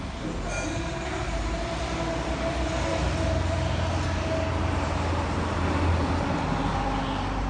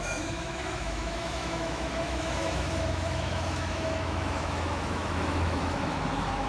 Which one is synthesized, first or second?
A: second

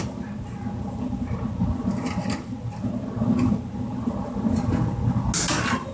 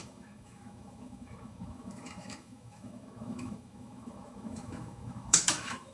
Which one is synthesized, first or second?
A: second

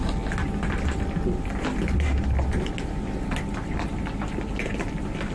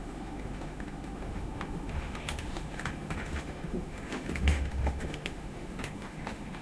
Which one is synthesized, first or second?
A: second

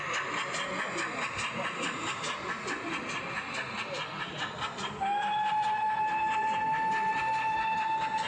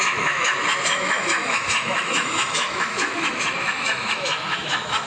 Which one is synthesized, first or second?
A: second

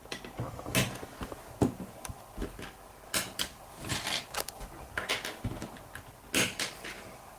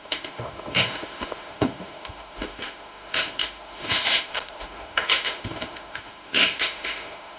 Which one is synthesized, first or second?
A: second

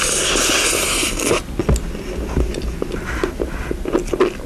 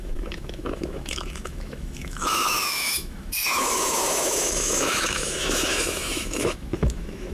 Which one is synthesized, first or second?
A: second